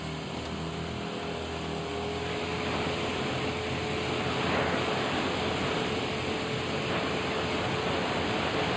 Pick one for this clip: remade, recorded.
recorded